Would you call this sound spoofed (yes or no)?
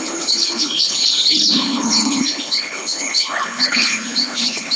yes